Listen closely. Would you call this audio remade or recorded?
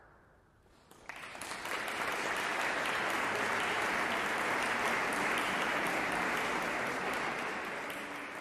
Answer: recorded